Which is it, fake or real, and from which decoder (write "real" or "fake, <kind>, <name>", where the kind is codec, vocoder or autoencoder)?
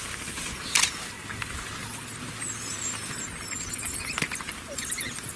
real